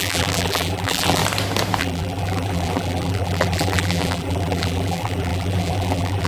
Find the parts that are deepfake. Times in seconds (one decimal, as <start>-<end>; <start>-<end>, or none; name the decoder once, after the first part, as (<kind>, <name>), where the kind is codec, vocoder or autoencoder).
0.0-1.2 (vocoder, BigVGAN v2); 1.8-6.3